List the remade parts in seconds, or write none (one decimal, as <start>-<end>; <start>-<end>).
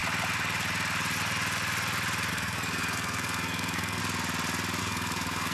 2.3-4.0; 4.8-5.5